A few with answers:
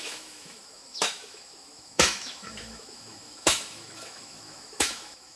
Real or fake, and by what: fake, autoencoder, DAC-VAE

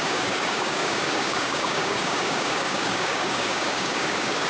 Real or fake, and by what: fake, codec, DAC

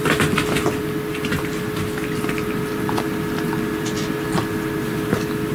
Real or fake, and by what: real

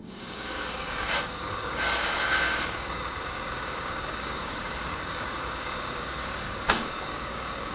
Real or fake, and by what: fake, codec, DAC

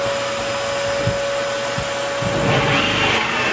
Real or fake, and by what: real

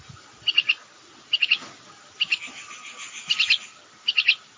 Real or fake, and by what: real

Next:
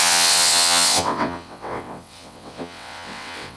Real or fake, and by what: fake, vocoder, WaveNeXt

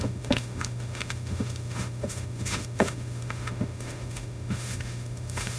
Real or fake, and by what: fake, autoencoder, DAC-VAE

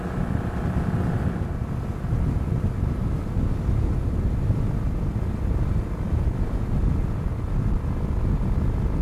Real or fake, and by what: real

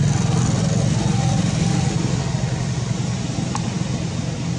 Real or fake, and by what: real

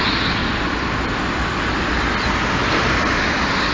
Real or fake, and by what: real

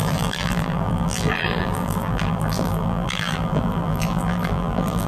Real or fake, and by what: fake, vocoder, BigVGAN v2